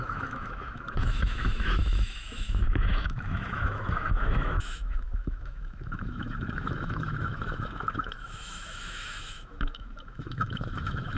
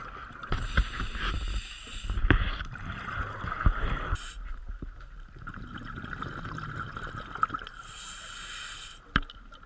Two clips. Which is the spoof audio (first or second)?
first